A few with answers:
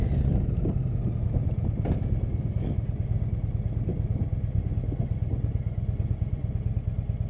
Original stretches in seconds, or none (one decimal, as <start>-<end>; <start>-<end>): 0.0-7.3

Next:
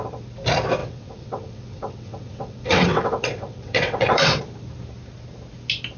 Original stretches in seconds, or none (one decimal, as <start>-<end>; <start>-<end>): 0.0-0.8; 4.4-6.0

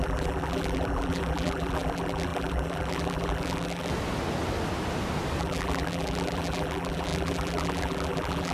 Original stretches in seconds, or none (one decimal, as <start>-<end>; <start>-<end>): 3.9-5.4